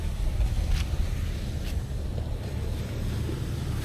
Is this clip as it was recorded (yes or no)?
yes